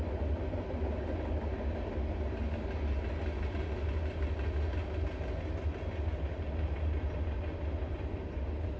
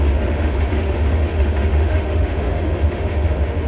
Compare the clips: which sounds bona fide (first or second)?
first